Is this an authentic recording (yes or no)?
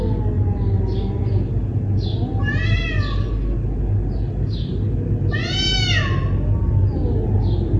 yes